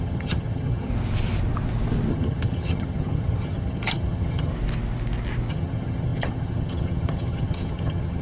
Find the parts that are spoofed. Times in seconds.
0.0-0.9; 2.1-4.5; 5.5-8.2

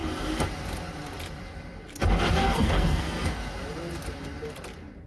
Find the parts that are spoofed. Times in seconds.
2.4-3.4

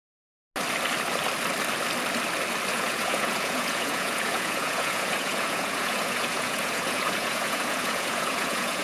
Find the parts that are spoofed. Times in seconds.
2.7-8.8